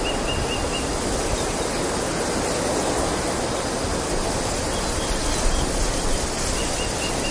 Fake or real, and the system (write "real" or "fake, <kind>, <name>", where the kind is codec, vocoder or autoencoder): real